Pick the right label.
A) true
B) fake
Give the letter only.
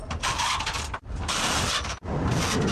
A